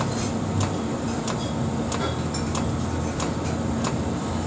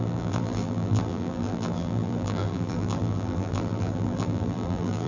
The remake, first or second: second